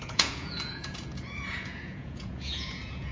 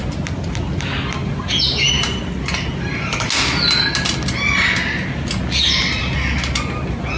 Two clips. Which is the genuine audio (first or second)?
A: second